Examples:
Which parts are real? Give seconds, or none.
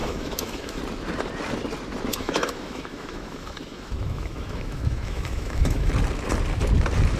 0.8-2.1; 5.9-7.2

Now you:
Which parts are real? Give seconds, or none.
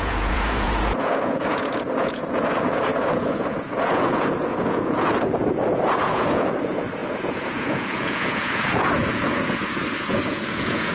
none